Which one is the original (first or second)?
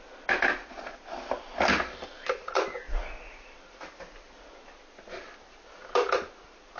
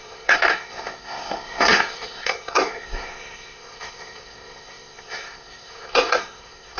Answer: first